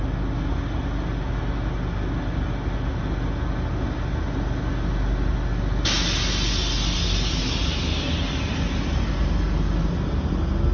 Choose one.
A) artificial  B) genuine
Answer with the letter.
B